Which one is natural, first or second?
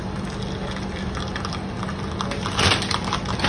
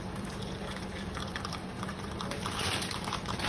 first